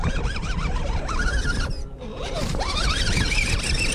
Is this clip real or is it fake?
real